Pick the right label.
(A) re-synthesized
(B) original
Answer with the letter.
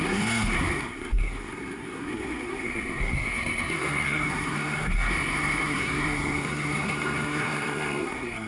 A